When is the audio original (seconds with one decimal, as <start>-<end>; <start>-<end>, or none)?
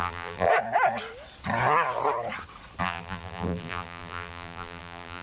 0.5-2.8